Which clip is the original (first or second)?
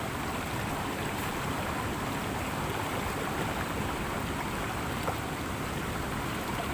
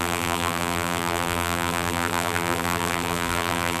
first